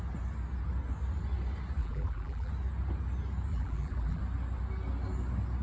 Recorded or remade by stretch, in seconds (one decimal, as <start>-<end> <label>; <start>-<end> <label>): 0.0-1.8 recorded; 1.8-2.5 remade; 2.5-3.5 recorded; 3.5-4.2 remade; 4.2-5.6 recorded